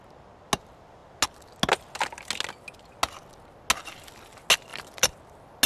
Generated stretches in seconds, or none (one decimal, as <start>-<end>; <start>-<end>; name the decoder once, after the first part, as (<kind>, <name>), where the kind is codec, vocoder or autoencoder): none